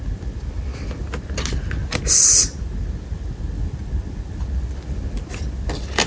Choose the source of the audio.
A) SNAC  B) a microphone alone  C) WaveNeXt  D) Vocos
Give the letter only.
B